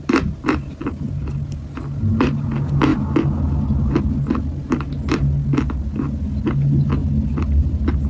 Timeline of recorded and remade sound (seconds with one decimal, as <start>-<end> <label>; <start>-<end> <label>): 0.0-8.1 recorded